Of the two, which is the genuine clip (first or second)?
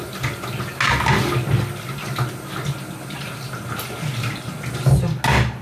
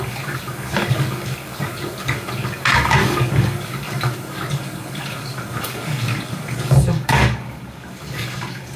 first